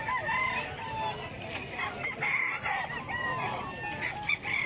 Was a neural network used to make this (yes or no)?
no